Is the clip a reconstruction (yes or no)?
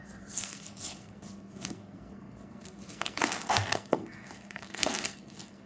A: yes